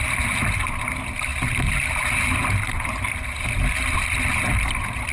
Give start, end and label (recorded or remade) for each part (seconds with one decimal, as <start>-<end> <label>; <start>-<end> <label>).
0.0-5.1 recorded

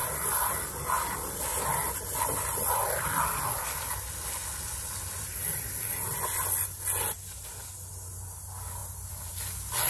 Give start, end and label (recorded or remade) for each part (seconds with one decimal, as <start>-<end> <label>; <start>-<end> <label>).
0.0-9.9 recorded

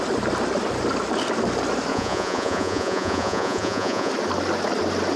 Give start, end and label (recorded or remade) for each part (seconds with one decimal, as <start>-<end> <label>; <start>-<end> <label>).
0.0-1.9 recorded; 1.9-4.1 remade; 4.1-5.2 recorded

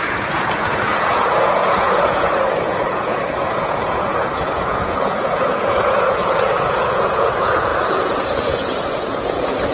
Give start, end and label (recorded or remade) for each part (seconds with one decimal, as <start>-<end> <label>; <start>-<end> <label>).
0.0-9.7 remade

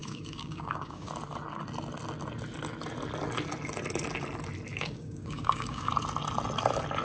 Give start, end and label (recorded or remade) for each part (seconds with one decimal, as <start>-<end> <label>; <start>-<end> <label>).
0.0-1.1 remade; 1.1-4.7 recorded; 4.7-5.9 remade; 5.9-7.0 recorded

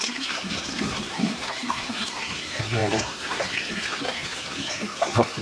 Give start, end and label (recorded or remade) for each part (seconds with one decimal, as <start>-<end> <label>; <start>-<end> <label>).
0.0-5.4 remade

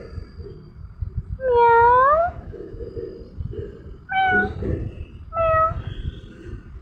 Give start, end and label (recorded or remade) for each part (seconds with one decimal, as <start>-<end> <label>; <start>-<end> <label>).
0.0-2.2 recorded; 2.2-2.9 remade; 2.9-6.8 recorded

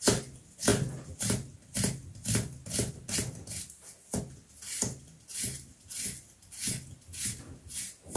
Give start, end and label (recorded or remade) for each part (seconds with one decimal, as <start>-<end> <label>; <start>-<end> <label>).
0.0-8.2 recorded